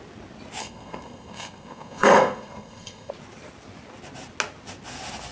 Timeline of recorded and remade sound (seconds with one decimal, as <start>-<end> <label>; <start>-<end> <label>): 0.0-0.6 recorded; 0.6-3.1 remade; 3.1-5.3 recorded